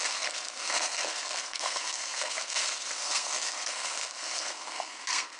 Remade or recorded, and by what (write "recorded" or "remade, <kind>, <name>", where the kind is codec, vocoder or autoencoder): remade, codec, SNAC